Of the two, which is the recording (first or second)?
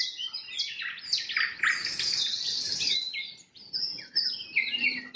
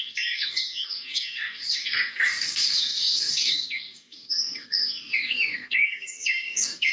first